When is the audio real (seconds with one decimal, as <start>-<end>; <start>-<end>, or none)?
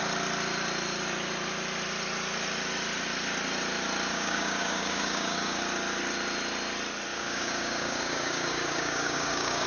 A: 0.0-4.1; 5.6-7.1